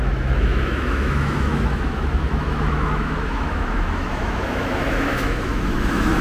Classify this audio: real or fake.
fake